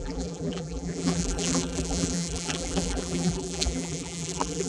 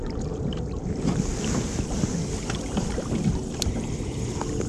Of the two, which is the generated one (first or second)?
first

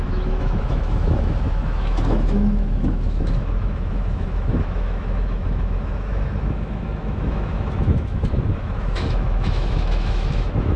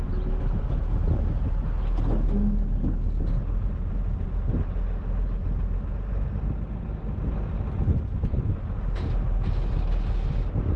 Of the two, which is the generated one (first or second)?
first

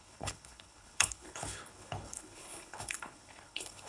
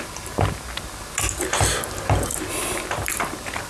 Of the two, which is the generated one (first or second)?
first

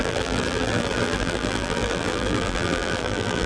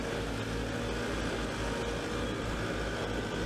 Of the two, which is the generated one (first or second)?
first